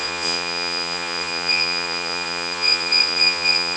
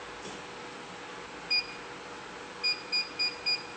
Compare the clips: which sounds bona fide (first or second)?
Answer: second